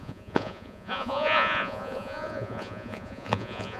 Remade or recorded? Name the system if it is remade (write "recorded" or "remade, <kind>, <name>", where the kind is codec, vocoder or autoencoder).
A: remade, vocoder, Vocos